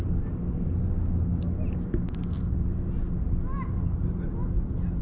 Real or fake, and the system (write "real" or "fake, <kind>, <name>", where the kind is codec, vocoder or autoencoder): real